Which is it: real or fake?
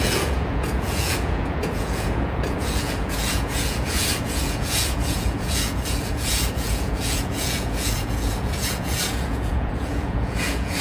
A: fake